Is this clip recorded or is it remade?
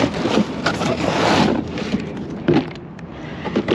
recorded